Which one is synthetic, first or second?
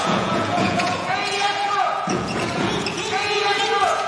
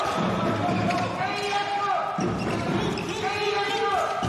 first